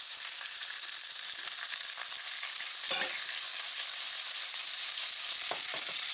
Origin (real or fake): real